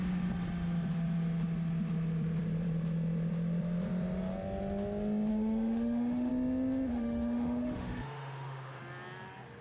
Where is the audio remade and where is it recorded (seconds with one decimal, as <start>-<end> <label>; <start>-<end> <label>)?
0.0-5.3 recorded; 5.3-6.3 remade; 6.3-6.9 recorded; 6.9-8.8 remade; 8.8-9.6 recorded